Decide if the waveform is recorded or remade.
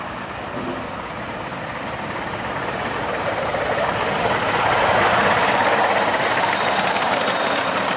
recorded